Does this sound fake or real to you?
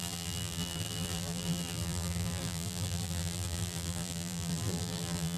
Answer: fake